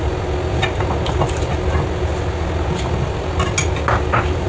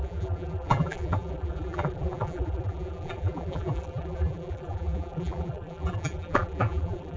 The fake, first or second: second